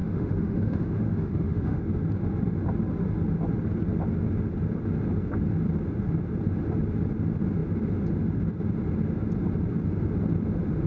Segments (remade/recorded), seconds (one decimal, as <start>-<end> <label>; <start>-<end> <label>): 0.0-1.8 remade; 1.8-10.9 recorded